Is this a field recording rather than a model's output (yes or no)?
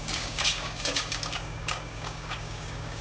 no